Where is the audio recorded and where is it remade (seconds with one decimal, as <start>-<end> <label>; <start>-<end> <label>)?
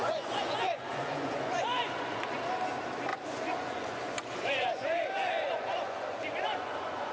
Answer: 0.0-2.4 remade; 2.4-3.1 recorded; 3.1-7.1 remade